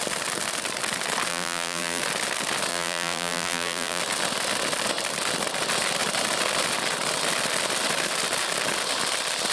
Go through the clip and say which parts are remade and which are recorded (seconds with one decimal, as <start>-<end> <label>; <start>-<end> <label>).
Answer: 0.0-1.3 recorded; 1.3-2.0 remade; 2.0-2.7 recorded; 2.7-4.0 remade; 4.0-9.5 recorded